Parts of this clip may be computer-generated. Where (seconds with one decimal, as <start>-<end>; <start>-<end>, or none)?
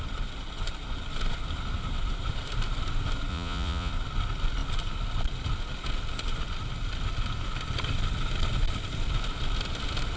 3.3-3.9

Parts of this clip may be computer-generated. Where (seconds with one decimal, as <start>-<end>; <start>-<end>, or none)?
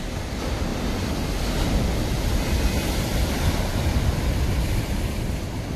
none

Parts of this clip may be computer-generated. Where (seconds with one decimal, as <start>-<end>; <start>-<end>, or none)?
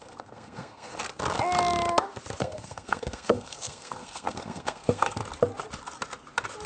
0.0-0.9; 2.4-5.2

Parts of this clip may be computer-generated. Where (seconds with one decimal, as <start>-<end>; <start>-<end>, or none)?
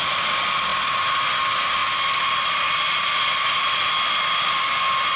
0.0-0.7; 1.4-5.2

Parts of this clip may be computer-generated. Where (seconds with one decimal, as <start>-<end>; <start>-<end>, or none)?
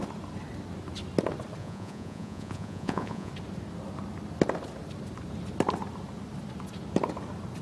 1.6-3.3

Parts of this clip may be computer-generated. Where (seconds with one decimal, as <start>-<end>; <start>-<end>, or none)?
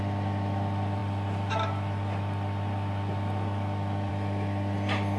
none